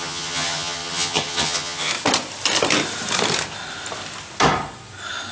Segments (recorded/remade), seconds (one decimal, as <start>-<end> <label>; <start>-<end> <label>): 0.0-1.9 remade; 1.9-5.3 recorded